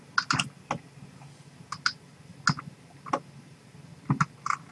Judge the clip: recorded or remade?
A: recorded